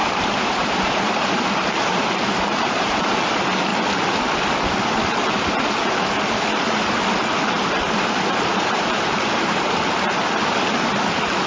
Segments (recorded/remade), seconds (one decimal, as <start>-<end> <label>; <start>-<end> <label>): 0.0-3.2 remade; 3.2-8.5 recorded; 8.5-9.8 remade; 9.8-11.5 recorded